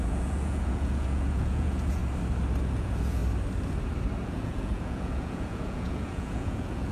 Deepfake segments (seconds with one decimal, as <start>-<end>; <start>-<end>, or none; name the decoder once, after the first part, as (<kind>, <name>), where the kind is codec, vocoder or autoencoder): 0.0-2.0 (vocoder, Vocos); 2.7-3.2; 4.2-6.9